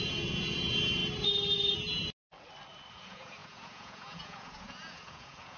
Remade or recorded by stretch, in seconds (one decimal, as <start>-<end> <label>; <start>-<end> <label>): 0.0-1.0 remade; 1.0-2.9 recorded; 2.9-5.6 remade